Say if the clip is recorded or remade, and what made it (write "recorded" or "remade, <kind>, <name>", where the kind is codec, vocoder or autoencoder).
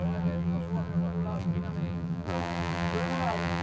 remade, vocoder, BigVGAN v2